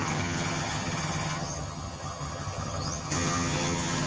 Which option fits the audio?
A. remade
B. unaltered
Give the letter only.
A